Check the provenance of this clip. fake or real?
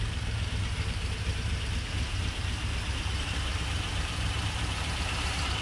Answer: fake